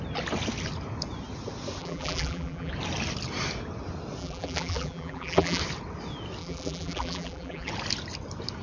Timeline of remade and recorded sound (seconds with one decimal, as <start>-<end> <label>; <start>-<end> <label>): 0.0-1.8 recorded; 1.8-2.7 remade; 2.7-4.2 recorded; 4.2-5.6 remade; 5.6-6.4 recorded; 6.4-7.7 remade; 7.7-8.6 recorded